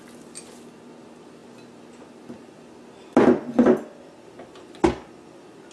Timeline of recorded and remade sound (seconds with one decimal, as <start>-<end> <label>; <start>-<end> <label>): 0.0-5.7 recorded